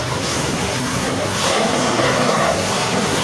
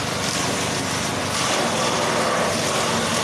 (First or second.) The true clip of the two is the second